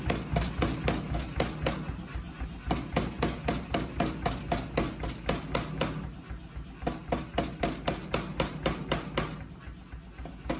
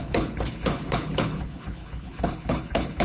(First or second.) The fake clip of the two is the second